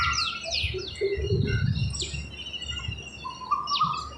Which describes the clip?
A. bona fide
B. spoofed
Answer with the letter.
A